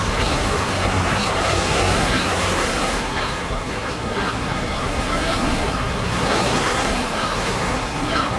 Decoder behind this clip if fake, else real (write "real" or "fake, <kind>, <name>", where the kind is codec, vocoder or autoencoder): fake, codec, SNAC